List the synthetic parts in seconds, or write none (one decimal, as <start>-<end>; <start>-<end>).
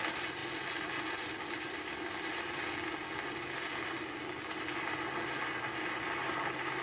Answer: none